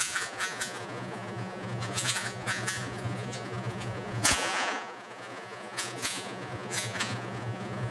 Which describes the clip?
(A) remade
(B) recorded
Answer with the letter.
A